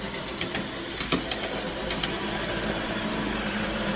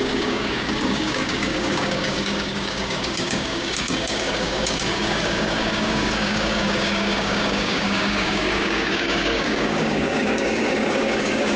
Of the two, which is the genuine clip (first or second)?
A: first